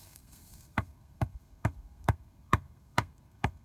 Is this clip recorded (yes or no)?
no